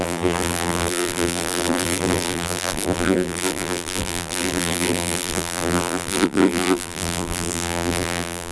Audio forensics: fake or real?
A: fake